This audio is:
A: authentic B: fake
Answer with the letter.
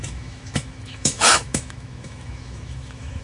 B